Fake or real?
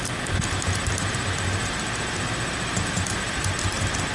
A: real